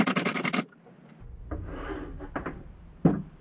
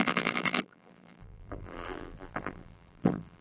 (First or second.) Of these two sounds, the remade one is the second